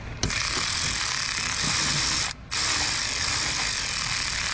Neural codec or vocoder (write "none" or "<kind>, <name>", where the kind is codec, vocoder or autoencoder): none